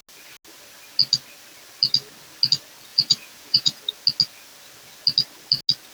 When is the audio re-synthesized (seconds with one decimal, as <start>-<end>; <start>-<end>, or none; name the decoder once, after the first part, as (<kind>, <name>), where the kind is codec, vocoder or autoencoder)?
2.9-3.8 (vocoder, Vocos)